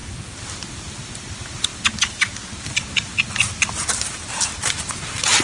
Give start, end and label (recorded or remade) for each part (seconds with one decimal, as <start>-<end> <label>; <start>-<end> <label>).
0.0-5.4 recorded